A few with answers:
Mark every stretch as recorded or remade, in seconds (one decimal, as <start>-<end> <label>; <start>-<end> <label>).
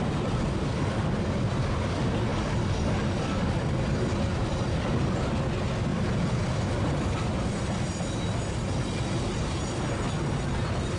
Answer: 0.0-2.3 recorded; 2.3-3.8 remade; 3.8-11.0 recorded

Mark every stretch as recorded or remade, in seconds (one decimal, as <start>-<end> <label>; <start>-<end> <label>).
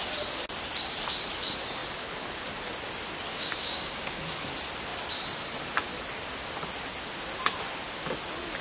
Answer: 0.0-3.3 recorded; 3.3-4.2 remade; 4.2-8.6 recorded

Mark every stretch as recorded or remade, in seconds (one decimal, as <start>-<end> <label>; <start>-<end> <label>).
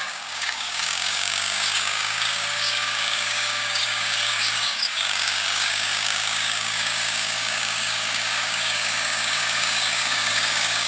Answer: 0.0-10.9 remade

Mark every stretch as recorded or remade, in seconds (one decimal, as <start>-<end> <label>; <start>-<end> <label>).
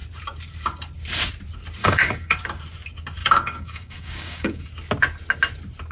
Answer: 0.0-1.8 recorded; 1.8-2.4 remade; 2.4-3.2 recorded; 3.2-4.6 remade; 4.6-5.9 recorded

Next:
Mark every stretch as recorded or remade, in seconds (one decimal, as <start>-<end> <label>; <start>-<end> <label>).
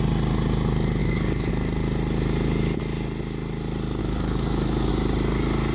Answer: 0.0-1.0 recorded; 1.0-1.5 remade; 1.5-4.0 recorded; 4.0-4.9 remade; 4.9-5.7 recorded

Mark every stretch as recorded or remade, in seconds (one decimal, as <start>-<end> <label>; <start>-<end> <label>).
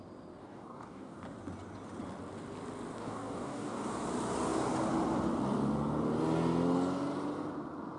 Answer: 0.0-0.4 recorded; 0.4-1.2 remade; 1.2-3.0 recorded; 3.0-3.9 remade; 3.9-8.0 recorded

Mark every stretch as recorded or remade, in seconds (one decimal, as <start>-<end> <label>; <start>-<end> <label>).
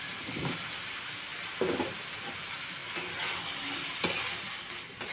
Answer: 0.0-5.1 recorded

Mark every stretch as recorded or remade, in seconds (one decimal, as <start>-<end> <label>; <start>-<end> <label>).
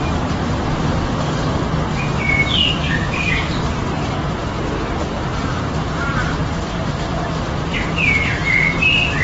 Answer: 0.0-2.6 recorded; 2.6-3.3 remade; 3.3-9.2 recorded